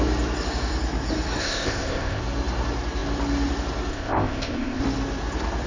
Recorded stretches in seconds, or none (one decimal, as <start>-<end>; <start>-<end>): 0.0-1.4; 2.2-3.9; 4.8-5.7